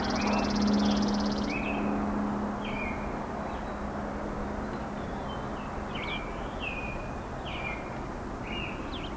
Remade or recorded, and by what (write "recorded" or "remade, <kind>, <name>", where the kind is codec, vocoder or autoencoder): recorded